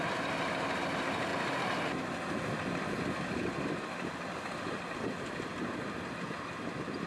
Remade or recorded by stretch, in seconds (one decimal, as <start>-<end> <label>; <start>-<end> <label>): 0.0-7.1 recorded